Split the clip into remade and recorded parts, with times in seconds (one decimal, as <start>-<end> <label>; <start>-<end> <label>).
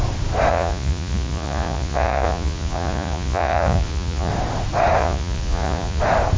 0.0-0.5 recorded; 0.5-4.3 remade; 4.3-5.0 recorded; 5.0-6.0 remade; 6.0-6.4 recorded